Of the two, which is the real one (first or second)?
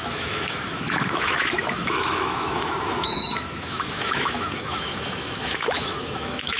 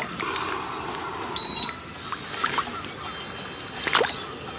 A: second